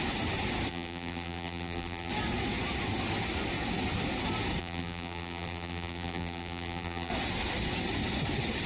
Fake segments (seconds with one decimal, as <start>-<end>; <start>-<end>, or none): 0.7-2.1; 4.6-7.1